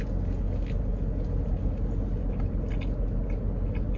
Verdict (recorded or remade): recorded